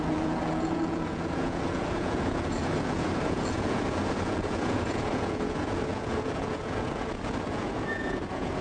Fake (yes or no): yes